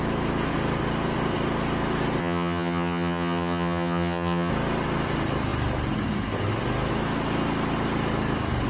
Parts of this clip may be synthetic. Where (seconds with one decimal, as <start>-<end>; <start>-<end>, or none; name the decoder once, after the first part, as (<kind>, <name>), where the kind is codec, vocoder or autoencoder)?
2.2-4.5 (vocoder, HiFi-GAN)